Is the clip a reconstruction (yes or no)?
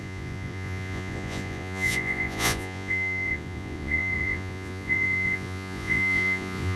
yes